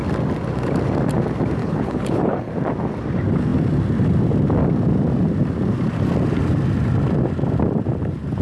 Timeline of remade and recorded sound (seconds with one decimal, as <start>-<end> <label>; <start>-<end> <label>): 0.0-1.6 recorded; 1.6-2.5 remade; 2.5-8.4 recorded